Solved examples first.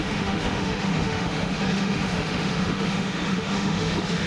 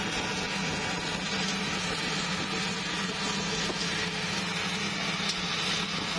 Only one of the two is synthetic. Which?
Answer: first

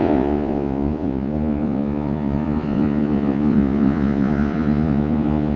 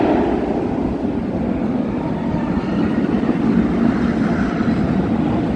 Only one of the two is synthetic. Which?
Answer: first